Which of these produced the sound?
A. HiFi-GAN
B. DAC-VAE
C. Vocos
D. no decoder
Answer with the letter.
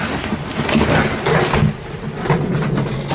D